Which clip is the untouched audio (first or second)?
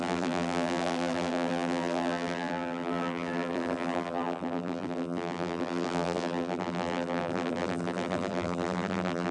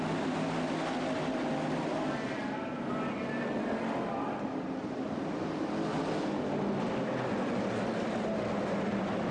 second